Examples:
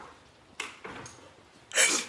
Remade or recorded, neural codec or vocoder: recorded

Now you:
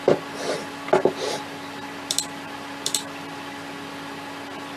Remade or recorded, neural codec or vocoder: recorded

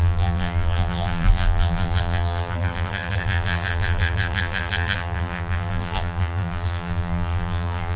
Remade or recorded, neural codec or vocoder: remade, vocoder, BigVGAN v2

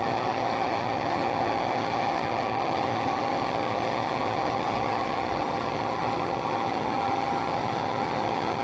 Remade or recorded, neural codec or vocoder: remade, vocoder, HiFi-GAN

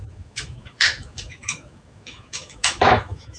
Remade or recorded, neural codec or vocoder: remade, autoencoder, DAC-VAE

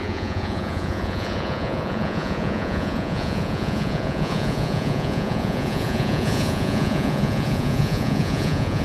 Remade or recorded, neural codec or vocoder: remade, vocoder, Vocos